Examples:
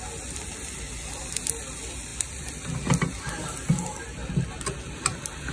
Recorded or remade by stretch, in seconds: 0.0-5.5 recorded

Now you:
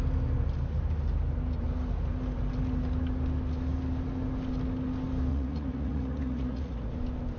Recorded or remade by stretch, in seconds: 0.0-5.3 recorded; 5.3-6.9 remade; 6.9-7.4 recorded

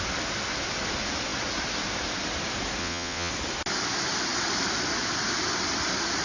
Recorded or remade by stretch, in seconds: 0.0-2.8 recorded; 2.8-3.3 remade; 3.3-6.2 recorded